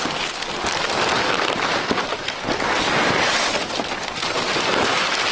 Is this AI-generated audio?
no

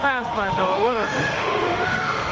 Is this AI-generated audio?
yes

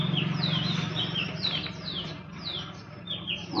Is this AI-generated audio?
no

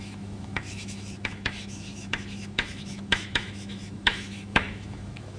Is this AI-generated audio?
yes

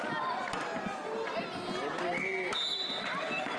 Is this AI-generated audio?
no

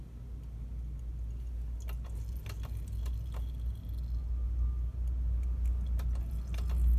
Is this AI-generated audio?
no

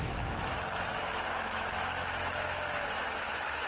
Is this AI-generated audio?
yes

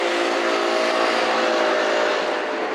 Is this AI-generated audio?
no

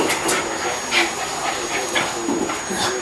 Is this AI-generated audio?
no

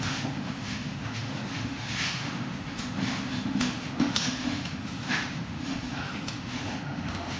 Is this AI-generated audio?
yes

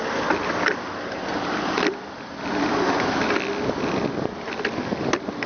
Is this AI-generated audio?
no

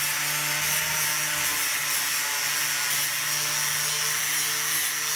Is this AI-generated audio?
no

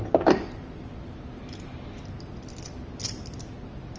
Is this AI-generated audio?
no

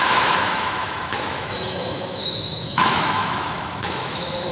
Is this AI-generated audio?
yes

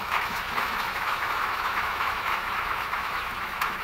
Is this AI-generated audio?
yes